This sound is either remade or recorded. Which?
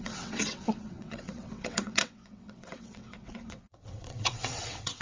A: remade